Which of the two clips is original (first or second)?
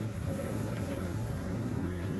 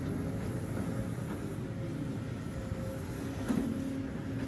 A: second